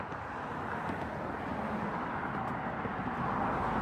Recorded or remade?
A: recorded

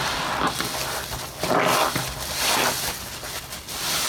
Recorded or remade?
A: recorded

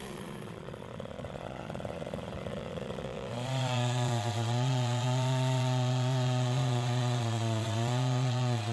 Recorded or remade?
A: remade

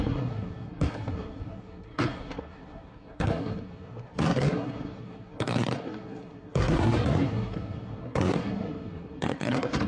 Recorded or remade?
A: remade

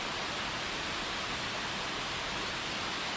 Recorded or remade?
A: recorded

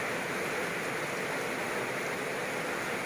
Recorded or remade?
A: recorded